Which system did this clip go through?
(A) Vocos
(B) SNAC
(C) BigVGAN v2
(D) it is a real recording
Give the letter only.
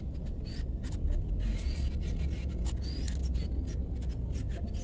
D